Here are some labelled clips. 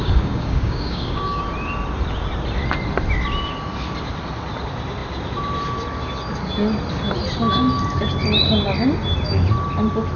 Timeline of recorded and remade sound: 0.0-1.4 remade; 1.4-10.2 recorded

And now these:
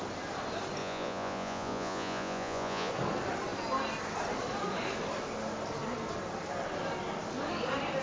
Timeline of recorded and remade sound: 0.0-0.8 recorded; 0.8-2.9 remade; 2.9-8.0 recorded

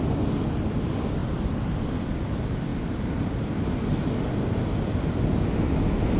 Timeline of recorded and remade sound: 0.0-6.2 recorded

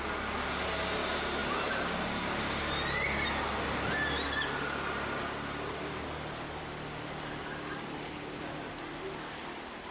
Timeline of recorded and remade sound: 0.0-9.9 recorded

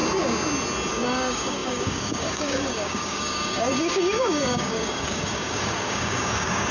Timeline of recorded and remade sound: 0.0-0.9 recorded; 0.9-6.7 remade

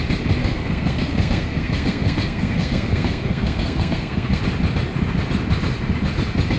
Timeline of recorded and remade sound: 0.0-0.4 recorded; 0.4-4.4 remade; 4.4-6.6 recorded